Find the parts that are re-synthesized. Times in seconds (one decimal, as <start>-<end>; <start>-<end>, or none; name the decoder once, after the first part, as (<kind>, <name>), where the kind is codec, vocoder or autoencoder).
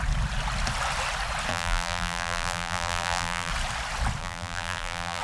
1.5-3.5 (vocoder, BigVGAN v2); 4.2-5.2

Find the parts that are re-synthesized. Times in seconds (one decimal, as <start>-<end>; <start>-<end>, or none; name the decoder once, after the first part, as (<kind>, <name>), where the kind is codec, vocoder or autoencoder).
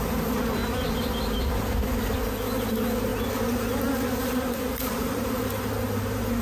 0.0-0.6 (vocoder, BigVGAN v2); 2.7-3.1; 3.7-6.4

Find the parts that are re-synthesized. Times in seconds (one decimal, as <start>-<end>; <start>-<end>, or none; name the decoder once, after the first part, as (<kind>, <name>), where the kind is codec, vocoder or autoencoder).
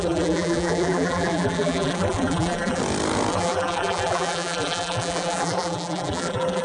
0.0-2.8 (vocoder, BigVGAN v2); 3.3-6.6